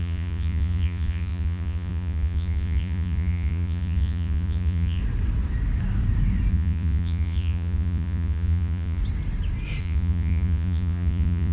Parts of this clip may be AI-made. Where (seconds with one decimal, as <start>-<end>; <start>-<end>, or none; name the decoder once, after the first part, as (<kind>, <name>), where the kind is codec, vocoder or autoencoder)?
0.0-5.0 (vocoder, Vocos); 6.5-9.0; 9.8-11.5